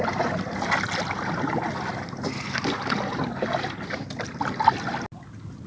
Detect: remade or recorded recorded